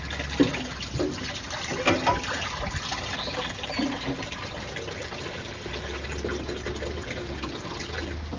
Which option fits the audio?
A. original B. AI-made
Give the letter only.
A